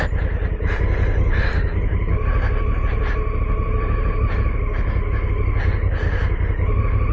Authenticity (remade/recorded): recorded